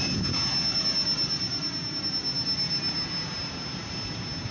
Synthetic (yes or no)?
no